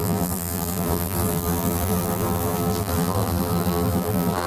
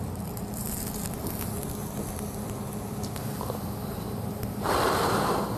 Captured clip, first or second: second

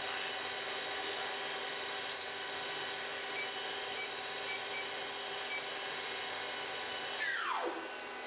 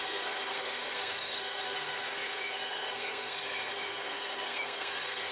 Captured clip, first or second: first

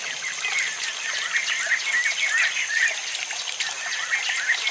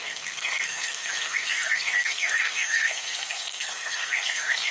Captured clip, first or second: first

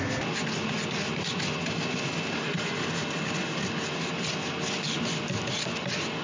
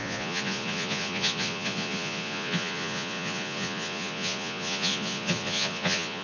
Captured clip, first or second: first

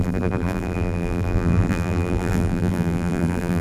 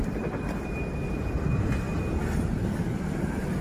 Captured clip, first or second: second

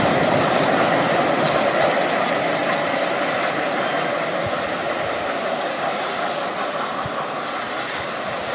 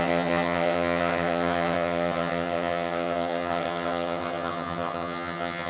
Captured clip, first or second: first